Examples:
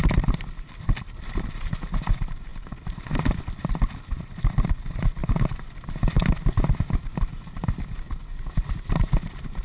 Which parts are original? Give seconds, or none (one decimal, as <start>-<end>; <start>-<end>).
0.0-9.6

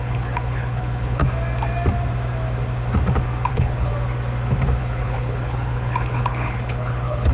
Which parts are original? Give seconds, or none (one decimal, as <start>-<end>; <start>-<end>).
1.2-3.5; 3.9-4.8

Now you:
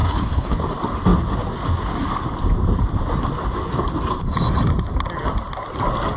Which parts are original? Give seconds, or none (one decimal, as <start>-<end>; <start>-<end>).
0.6-6.2

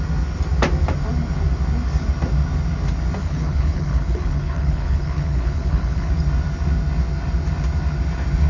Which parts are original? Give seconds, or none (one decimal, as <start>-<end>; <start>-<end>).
0.0-3.2; 6.1-8.5